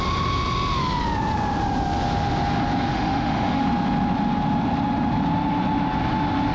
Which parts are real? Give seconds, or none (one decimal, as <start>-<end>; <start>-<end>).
0.0-2.9; 3.6-6.5